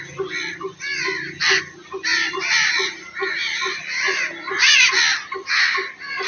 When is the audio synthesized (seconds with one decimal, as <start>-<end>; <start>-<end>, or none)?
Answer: none